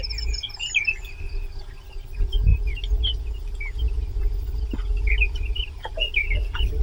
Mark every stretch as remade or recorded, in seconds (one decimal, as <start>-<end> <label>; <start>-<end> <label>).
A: 0.0-6.8 recorded